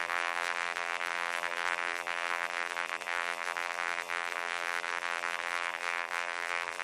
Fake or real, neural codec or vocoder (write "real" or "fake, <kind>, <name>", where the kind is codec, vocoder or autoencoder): fake, vocoder, BigVGAN v2